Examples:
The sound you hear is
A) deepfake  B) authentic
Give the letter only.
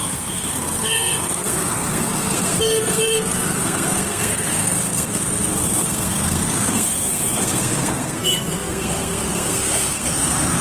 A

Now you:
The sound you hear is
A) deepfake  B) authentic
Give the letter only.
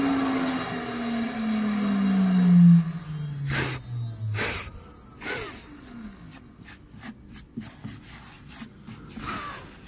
B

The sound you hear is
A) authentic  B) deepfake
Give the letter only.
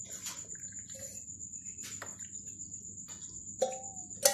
A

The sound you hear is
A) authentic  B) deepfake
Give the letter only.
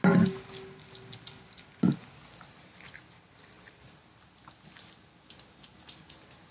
A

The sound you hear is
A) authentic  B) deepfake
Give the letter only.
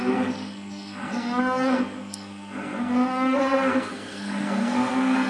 B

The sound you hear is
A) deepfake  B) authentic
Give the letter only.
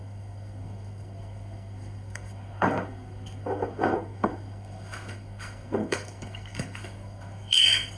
A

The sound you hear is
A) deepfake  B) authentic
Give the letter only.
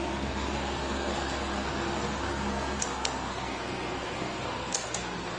A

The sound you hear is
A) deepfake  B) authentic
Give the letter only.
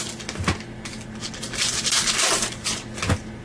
B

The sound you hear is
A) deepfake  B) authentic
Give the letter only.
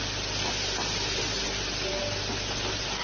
B